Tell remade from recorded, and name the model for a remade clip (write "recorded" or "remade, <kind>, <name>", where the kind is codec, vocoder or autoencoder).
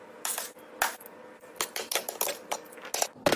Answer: recorded